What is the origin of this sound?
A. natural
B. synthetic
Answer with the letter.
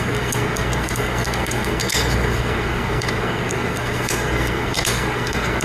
B